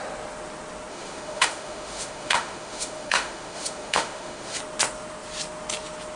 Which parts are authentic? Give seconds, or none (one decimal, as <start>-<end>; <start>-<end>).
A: 0.0-0.9; 4.6-6.2